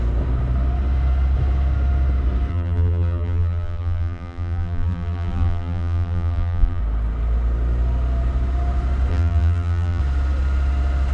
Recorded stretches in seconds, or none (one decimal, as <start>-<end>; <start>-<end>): 0.0-2.5; 6.8-9.1; 10.0-11.1